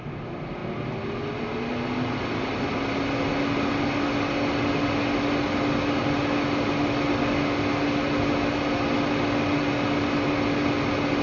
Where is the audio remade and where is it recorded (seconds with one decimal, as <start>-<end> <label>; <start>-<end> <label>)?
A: 0.0-11.2 recorded